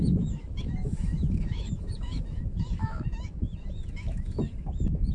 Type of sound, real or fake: fake